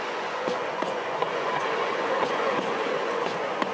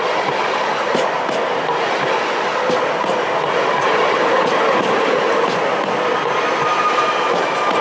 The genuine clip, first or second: second